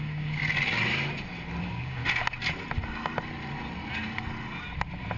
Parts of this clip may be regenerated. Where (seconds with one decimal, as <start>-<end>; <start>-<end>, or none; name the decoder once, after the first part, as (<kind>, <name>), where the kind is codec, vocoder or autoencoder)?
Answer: 0.0-0.4 (codec, DAC); 1.6-2.0